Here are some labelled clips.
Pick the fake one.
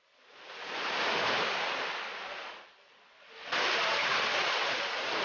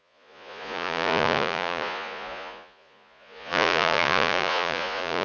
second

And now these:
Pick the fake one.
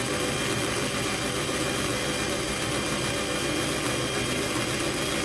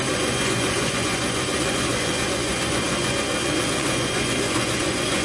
second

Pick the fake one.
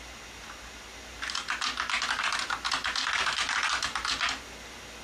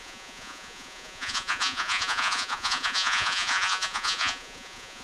second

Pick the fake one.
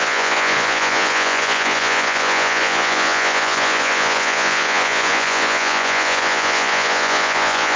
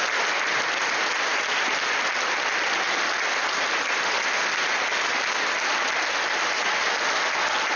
first